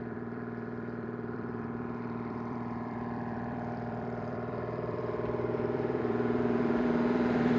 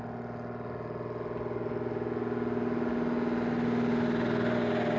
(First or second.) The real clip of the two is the second